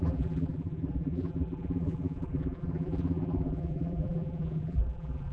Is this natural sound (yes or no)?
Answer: no